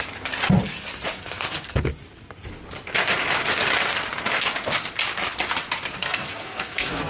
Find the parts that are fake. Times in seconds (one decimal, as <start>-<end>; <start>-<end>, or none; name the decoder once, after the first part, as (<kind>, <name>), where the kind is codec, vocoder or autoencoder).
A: 1.2-1.9 (codec, SNAC); 6.0-7.1